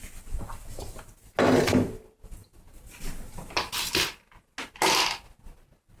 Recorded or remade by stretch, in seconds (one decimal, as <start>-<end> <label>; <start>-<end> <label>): 0.0-6.0 recorded